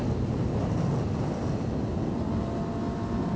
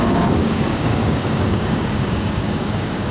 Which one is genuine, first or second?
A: first